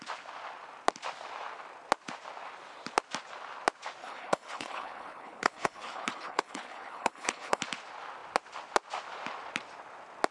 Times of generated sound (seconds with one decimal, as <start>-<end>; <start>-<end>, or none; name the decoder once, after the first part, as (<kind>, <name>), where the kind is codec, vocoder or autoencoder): 4.0-7.6 (codec, HILCodec)